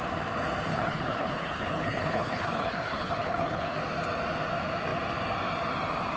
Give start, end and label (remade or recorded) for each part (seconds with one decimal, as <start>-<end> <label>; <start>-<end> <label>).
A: 0.0-0.7 recorded; 0.7-3.8 remade; 3.8-6.2 recorded